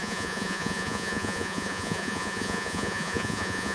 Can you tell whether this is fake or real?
fake